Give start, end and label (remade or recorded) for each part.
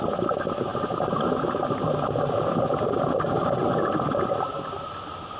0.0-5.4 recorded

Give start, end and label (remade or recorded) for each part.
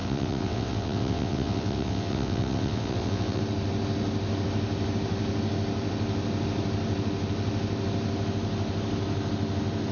0.0-3.4 remade; 3.4-9.9 recorded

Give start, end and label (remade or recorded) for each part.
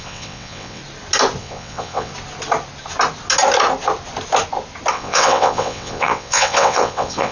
0.0-0.8 remade; 0.8-1.4 recorded; 1.4-2.1 remade; 2.1-4.9 recorded; 4.9-7.3 remade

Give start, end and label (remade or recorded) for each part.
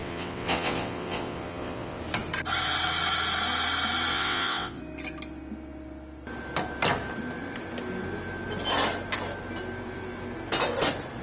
0.0-2.0 remade; 2.0-4.1 recorded; 4.1-4.8 remade; 4.8-11.2 recorded